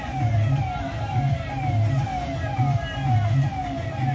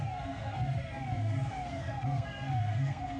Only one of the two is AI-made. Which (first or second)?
second